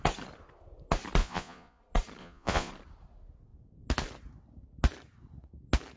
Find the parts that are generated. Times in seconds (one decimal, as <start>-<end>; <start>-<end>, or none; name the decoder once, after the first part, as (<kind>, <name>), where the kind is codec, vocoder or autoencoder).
1.2-1.8 (vocoder, Vocos); 2.2-2.7